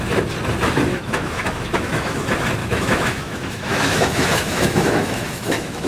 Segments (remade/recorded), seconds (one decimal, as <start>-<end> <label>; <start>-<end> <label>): 0.0-0.9 recorded; 0.9-2.2 remade; 2.2-2.6 recorded; 2.6-5.9 remade